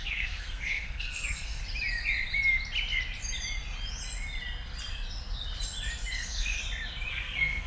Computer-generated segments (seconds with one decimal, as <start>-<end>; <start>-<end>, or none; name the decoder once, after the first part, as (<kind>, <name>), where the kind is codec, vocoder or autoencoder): 0.0-1.6 (codec, SNAC); 6.1-6.6; 7.1-7.7